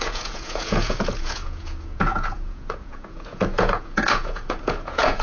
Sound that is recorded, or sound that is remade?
remade